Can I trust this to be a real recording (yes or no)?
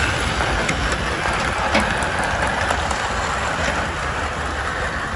yes